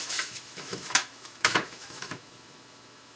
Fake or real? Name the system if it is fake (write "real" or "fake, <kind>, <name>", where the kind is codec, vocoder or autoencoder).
fake, autoencoder, DAC-VAE